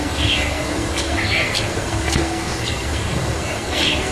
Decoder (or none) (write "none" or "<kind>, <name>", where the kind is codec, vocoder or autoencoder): codec, SNAC